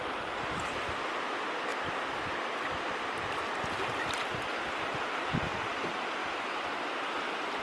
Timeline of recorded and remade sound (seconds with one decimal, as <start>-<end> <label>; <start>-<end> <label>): 0.0-7.6 recorded